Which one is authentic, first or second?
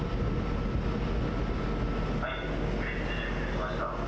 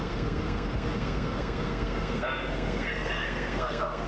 first